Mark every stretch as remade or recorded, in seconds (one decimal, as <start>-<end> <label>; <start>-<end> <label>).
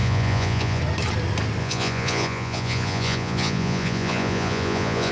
0.0-0.8 remade; 0.8-1.6 recorded; 1.6-5.1 remade